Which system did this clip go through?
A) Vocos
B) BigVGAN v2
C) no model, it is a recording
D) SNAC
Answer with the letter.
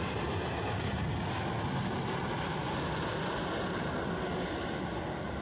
C